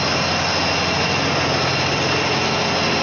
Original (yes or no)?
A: yes